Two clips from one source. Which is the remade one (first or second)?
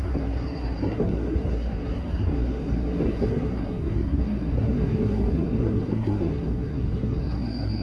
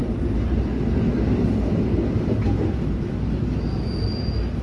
first